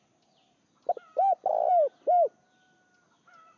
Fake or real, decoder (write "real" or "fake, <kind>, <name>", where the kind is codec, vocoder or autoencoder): real